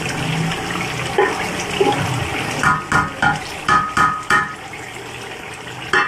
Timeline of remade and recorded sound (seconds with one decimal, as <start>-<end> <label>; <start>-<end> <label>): 0.0-6.1 recorded